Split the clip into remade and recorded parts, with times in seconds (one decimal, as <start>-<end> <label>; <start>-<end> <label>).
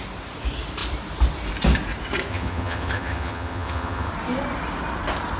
0.0-2.3 recorded; 2.3-4.1 remade; 4.1-5.4 recorded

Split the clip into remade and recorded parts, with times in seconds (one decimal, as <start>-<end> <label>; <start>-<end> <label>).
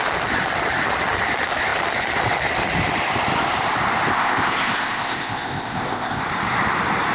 0.0-4.1 recorded; 4.1-6.2 remade; 6.2-7.1 recorded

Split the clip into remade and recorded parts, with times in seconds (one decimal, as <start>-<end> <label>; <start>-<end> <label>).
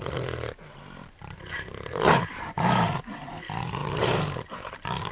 0.0-1.0 recorded; 1.0-3.3 remade; 3.3-3.8 recorded; 3.8-5.1 remade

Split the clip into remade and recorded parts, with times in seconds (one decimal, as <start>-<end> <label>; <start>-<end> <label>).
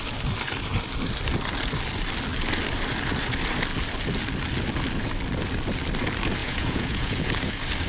0.0-6.4 recorded; 6.4-7.3 remade; 7.3-7.9 recorded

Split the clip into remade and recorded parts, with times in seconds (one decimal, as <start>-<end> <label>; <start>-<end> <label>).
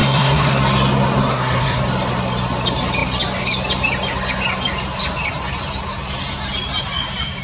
0.0-0.6 remade; 0.6-1.3 recorded; 1.3-1.8 remade; 1.8-7.4 recorded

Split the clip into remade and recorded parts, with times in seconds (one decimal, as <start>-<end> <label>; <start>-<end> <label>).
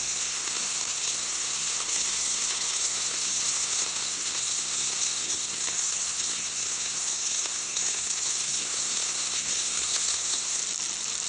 0.0-10.6 remade; 10.6-11.3 recorded